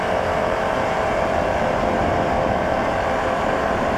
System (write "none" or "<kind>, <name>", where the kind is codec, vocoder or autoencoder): vocoder, BigVGAN v2